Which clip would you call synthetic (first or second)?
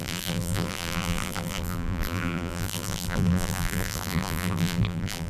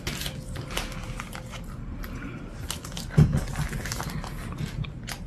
first